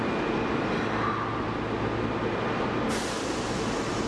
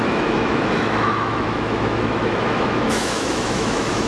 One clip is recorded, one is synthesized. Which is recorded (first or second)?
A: first